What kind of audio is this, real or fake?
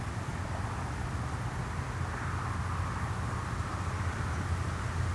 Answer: real